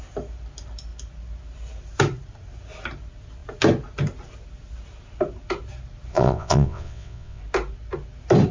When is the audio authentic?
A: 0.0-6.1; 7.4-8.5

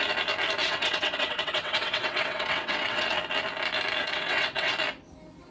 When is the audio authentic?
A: 0.0-0.6; 3.2-4.0; 4.7-5.5